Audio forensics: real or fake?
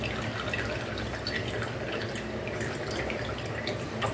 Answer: real